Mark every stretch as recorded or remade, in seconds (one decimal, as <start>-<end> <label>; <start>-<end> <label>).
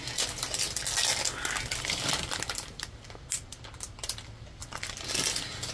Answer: 0.0-5.7 recorded